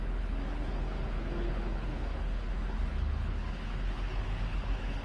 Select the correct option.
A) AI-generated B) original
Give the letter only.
A